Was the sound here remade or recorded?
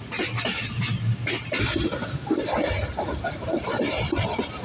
recorded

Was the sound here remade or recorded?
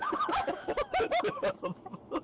remade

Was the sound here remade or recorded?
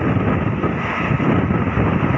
recorded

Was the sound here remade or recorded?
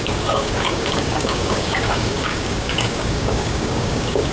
remade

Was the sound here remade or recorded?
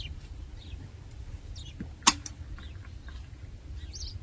recorded